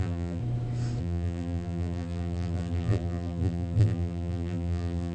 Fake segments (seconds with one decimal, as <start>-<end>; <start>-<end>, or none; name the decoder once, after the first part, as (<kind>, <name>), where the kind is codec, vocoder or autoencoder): 0.0-0.4 (vocoder, BigVGAN v2); 1.0-5.1